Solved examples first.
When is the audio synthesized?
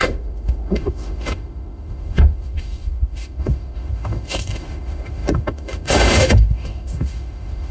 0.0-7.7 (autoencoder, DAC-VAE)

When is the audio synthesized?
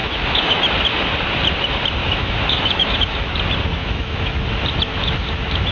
0.0-0.6 (autoencoder, DAC-VAE); 2.0-3.3; 3.8-4.4; 4.9-5.7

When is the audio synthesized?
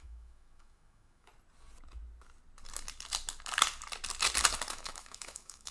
0.0-1.3 (autoencoder, DAC-VAE); 4.7-5.7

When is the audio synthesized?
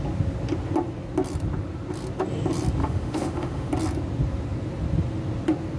2.8-3.7 (autoencoder, DAC-VAE)